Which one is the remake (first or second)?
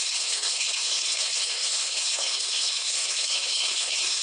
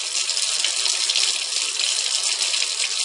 first